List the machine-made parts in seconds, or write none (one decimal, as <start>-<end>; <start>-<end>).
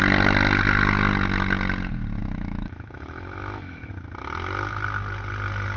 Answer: 2.2-3.9